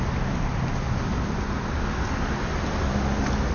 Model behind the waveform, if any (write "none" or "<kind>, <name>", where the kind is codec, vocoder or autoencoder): none